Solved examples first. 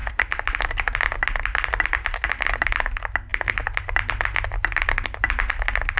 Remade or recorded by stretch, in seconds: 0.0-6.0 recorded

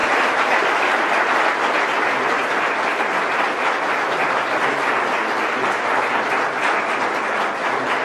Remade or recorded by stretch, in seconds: 0.0-8.0 recorded

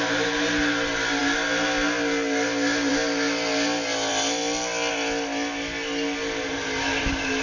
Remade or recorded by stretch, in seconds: 0.0-7.4 recorded

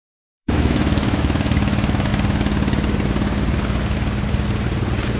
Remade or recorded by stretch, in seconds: 0.0-2.1 remade; 2.1-5.2 recorded

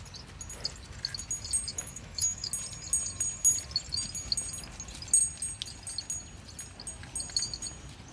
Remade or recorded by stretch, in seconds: 0.0-1.7 recorded; 1.7-2.5 remade; 2.5-8.1 recorded

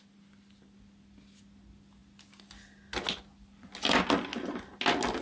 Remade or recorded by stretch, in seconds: 0.0-5.2 recorded

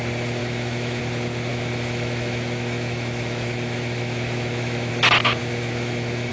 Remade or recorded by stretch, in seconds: 0.0-0.4 recorded; 0.4-1.0 remade; 1.0-1.5 recorded; 1.5-4.9 remade; 4.9-5.4 recorded; 5.4-6.3 remade

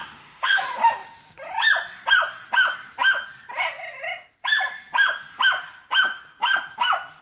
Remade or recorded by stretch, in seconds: 0.0-0.6 remade; 0.6-7.2 recorded